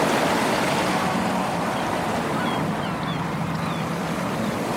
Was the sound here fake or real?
real